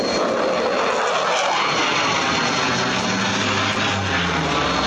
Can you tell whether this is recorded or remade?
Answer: recorded